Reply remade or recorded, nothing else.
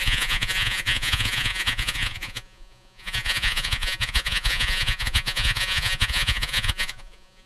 remade